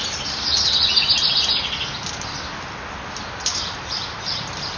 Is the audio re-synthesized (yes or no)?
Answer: no